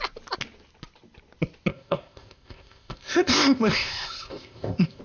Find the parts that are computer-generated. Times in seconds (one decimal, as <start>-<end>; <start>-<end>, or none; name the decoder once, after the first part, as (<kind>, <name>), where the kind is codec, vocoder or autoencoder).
1.7-5.0 (codec, ZipCodec)